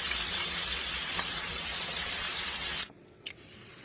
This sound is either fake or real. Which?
fake